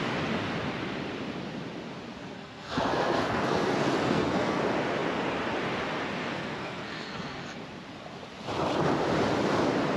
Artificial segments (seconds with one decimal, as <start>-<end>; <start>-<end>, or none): 2.2-4.6; 6.2-7.6